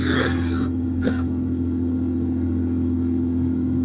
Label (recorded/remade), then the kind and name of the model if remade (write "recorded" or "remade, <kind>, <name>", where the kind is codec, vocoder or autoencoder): remade, codec, SNAC